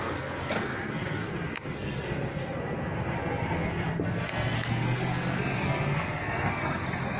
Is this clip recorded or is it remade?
remade